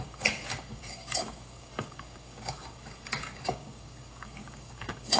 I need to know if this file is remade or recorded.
remade